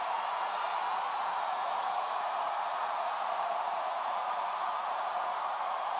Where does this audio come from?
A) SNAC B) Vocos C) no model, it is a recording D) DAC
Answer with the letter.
B